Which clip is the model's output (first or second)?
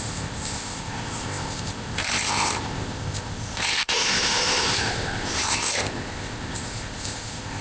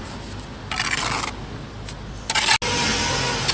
first